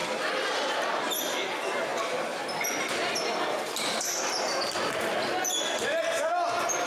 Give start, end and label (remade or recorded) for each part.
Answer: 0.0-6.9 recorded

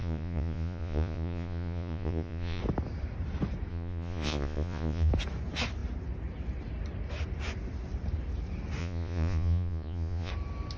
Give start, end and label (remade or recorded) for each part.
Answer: 0.0-2.6 remade; 2.6-3.7 recorded; 3.7-5.1 remade; 5.1-8.8 recorded; 8.8-10.3 remade; 10.3-10.8 recorded

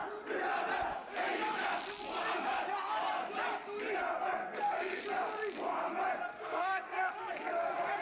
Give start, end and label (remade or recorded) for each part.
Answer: 0.0-4.4 recorded; 4.4-5.0 remade; 5.0-6.3 recorded; 6.3-7.1 remade; 7.1-8.0 recorded

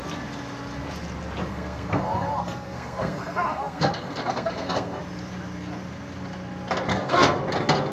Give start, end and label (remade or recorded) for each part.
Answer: 0.0-1.5 recorded; 1.5-5.0 remade; 5.0-6.9 recorded; 6.9-7.4 remade; 7.4-7.9 recorded

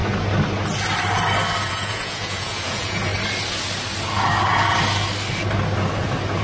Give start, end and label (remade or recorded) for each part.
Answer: 0.0-1.7 recorded; 1.7-3.1 remade; 3.1-6.4 recorded

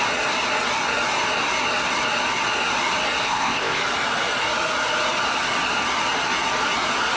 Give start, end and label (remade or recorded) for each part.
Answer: 0.0-3.2 recorded; 3.2-3.8 remade; 3.8-7.2 recorded

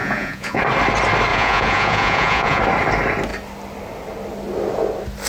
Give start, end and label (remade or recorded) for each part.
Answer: 0.0-0.6 remade; 0.6-1.3 recorded; 1.3-2.6 remade; 2.6-5.3 recorded

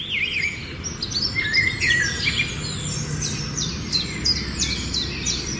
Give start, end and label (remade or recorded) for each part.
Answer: 0.0-5.6 recorded